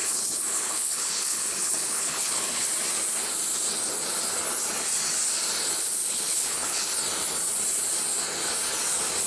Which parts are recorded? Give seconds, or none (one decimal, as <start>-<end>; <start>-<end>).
2.7-6.0; 6.9-9.3